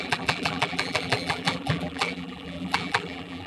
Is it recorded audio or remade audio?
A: remade